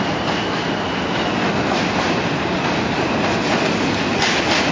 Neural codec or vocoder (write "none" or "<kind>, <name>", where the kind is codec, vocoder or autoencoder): none